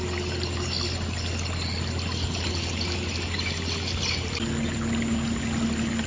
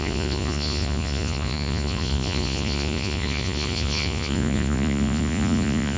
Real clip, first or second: first